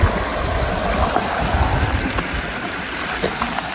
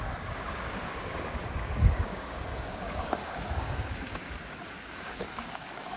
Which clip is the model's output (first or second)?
second